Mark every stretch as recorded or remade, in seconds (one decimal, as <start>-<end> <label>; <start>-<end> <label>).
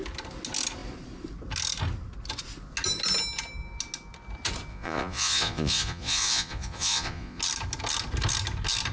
0.0-4.7 recorded; 4.7-7.4 remade; 7.4-8.9 recorded